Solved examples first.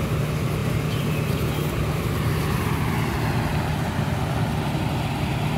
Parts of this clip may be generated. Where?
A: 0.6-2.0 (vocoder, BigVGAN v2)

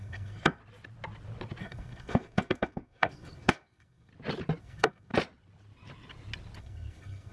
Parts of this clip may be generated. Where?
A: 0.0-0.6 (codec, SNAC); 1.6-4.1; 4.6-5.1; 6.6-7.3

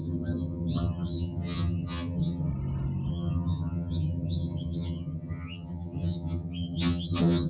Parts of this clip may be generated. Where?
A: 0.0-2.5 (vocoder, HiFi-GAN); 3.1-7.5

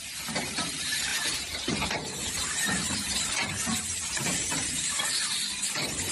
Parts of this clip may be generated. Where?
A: 0.0-6.1 (vocoder, BigVGAN v2)

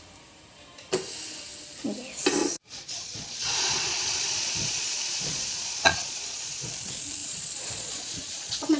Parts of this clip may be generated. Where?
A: 2.4-6.7 (vocoder, Vocos); 7.2-8.8